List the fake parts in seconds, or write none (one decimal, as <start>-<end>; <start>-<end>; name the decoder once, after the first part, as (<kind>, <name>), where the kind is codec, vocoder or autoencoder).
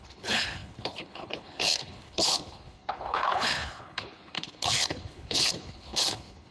0.0-6.5 (codec, HILCodec)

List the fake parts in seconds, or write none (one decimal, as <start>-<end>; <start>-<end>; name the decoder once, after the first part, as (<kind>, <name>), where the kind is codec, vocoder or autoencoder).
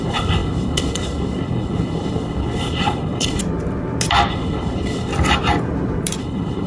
0.0-3.4 (codec, HILCodec); 4.3-5.1; 6.2-6.7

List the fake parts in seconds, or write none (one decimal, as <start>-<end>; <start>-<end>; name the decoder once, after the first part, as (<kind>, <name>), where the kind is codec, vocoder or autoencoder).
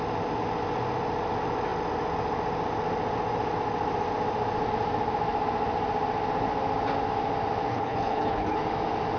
7.7-8.6 (codec, HILCodec)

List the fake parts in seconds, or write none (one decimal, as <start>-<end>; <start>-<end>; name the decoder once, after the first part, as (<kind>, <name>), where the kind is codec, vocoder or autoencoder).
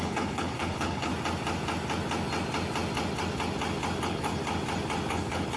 0.0-1.1 (codec, HILCodec); 4.0-4.4; 5.1-5.6